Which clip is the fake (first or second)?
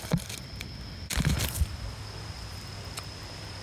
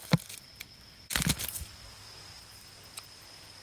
first